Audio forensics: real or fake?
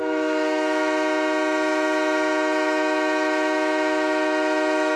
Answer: fake